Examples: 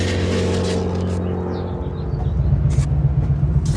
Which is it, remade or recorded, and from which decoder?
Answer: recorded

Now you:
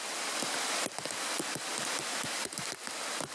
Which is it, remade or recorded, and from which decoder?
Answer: recorded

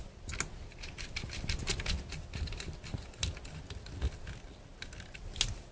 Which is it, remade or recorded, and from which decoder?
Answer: recorded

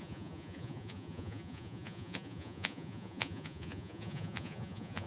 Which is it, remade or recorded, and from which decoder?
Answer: remade, vocoder, Vocos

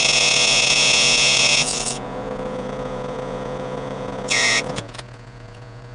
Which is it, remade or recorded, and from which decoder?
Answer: remade, vocoder, Vocos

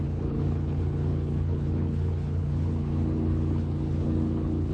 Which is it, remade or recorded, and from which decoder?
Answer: remade, codec, HILCodec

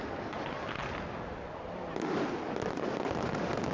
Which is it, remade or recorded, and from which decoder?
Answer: recorded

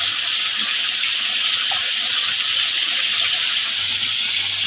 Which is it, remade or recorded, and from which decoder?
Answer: recorded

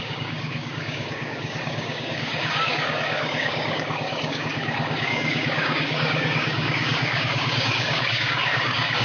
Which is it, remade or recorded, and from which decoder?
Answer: remade, codec, DAC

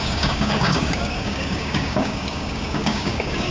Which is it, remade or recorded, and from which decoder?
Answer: remade, codec, DAC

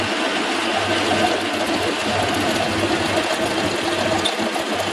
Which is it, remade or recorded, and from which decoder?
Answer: recorded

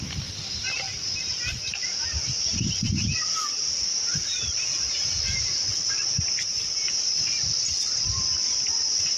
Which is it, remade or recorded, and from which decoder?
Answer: remade, vocoder, BigVGAN v2